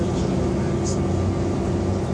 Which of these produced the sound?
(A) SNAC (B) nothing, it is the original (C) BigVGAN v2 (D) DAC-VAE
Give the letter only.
B